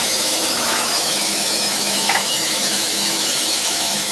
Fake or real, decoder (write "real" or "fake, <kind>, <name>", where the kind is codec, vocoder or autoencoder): fake, autoencoder, DAC-VAE